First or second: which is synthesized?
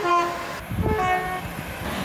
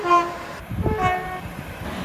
second